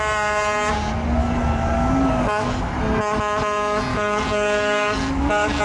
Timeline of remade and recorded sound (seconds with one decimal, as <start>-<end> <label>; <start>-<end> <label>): 0.0-1.2 recorded; 1.2-2.7 remade; 2.7-3.9 recorded; 3.9-5.6 remade